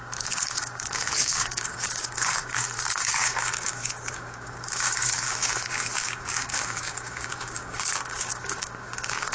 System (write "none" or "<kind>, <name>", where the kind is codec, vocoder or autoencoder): codec, DAC